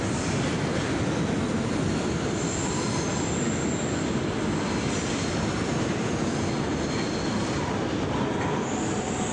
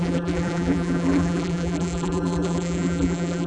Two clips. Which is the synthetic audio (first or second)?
second